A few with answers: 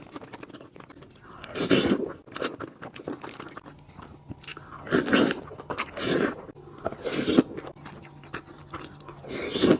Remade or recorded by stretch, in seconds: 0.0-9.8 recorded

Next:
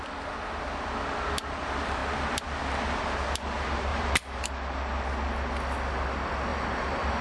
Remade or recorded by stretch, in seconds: 0.0-3.9 recorded; 3.9-4.4 remade; 4.4-6.5 recorded; 6.5-7.2 remade

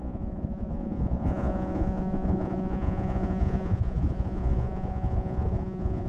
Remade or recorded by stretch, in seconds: 0.0-6.1 remade